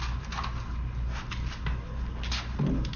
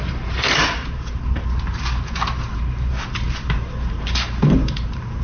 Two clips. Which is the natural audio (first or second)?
first